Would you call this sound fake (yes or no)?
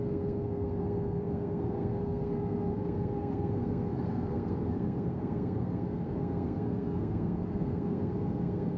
yes